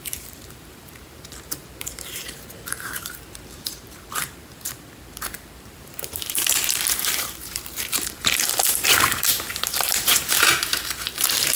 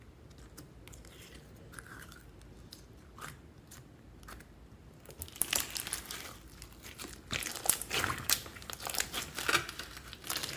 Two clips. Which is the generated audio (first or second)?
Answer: first